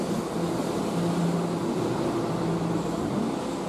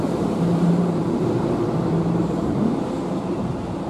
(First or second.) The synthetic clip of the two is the second